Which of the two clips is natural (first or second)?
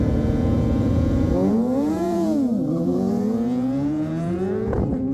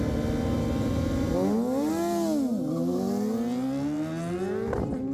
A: second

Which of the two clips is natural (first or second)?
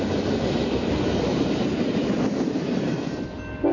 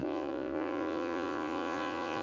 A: first